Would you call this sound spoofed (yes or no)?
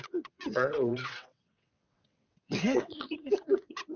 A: yes